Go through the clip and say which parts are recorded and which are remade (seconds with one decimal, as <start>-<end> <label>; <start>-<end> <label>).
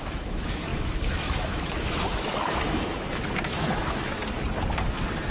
0.0-4.2 remade; 4.2-5.3 recorded